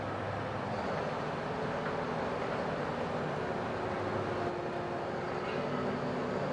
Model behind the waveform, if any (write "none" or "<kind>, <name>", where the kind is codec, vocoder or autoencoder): none